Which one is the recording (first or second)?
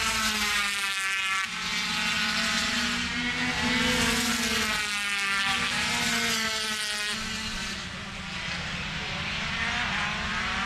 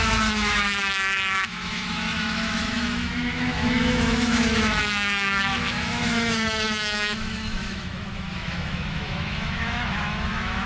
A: first